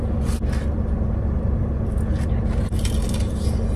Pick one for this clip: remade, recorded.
recorded